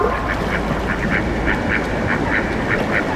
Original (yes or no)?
yes